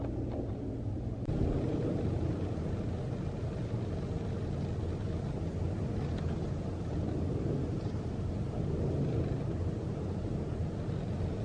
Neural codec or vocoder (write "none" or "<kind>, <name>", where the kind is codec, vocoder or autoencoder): none